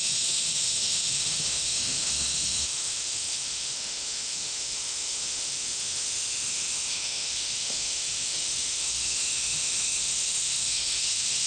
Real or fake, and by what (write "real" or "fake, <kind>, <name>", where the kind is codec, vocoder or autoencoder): fake, autoencoder, DAC-VAE